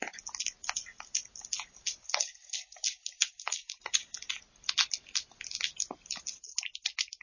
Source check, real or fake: real